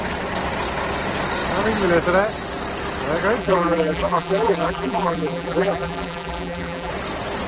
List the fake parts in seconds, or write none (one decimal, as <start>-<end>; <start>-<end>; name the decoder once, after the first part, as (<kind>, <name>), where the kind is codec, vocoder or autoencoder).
3.4-6.9 (vocoder, BigVGAN v2)